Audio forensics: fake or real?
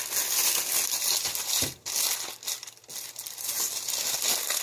real